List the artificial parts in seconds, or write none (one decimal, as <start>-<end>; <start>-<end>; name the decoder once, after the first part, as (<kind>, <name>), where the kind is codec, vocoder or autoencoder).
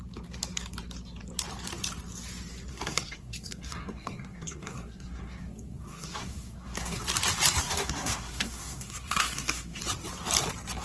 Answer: 2.7-7.0 (codec, SNAC); 7.6-9.8